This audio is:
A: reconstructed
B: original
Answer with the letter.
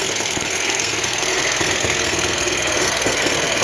A